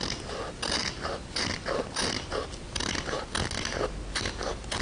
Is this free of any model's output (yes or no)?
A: yes